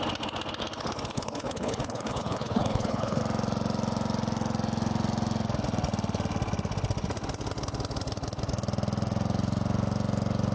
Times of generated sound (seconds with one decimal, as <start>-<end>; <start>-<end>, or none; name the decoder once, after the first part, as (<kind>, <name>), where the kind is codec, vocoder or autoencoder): 1.1-3.2 (codec, HILCodec)

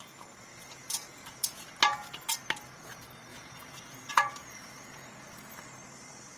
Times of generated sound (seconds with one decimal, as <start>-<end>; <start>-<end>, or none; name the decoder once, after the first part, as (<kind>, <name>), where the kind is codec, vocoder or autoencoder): 0.5-1.6 (vocoder, Vocos); 3.3-5.3